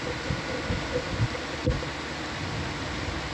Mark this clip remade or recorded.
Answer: recorded